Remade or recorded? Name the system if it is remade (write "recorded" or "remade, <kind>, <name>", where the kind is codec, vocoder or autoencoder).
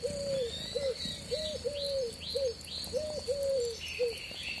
recorded